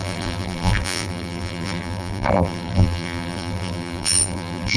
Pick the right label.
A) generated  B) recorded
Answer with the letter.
A